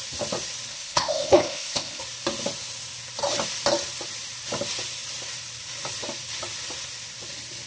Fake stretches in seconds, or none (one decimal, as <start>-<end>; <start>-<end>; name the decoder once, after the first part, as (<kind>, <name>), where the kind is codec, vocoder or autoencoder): 0.7-2.0 (codec, ZipCodec)